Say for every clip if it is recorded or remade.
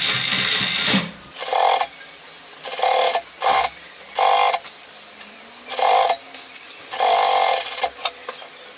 recorded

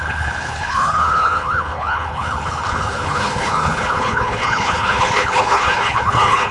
remade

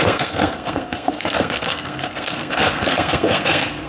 remade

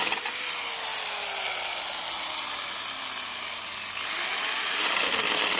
recorded